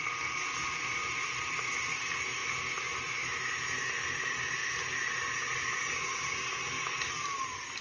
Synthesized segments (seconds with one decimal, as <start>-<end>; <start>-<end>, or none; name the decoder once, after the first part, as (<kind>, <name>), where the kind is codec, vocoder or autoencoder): none